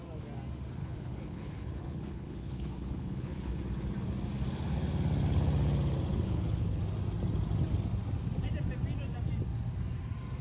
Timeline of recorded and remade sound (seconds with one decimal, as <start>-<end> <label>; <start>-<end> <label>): 0.0-0.8 recorded; 0.8-3.6 remade; 3.6-6.1 recorded; 6.1-6.8 remade; 6.8-10.4 recorded